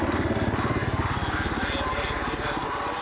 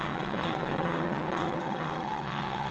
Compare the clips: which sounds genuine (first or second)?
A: first